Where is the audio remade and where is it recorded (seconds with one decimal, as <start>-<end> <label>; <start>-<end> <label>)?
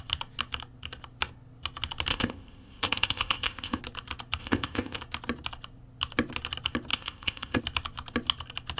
0.0-2.1 recorded; 2.1-3.8 remade; 3.8-4.4 recorded; 4.4-5.0 remade; 5.0-6.9 recorded; 6.9-7.6 remade; 7.6-8.8 recorded